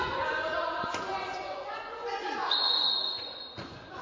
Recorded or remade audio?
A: remade